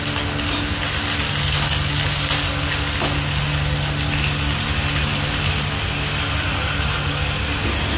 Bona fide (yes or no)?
yes